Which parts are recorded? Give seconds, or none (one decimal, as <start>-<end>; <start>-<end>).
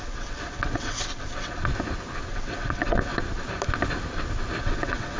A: 1.6-2.3; 3.1-4.6